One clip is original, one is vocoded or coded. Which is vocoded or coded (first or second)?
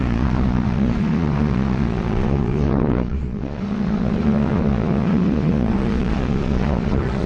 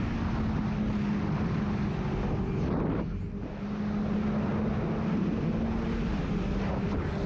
first